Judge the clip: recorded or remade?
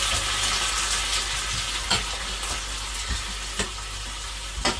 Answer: recorded